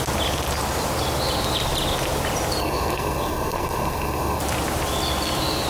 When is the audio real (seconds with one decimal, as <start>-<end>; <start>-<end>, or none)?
0.0-2.6; 4.4-5.7